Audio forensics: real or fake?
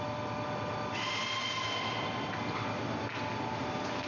real